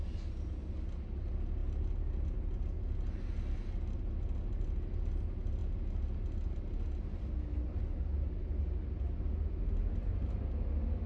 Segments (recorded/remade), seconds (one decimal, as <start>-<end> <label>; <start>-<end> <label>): 0.0-11.1 recorded